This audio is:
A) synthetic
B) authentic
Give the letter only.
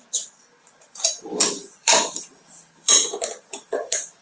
A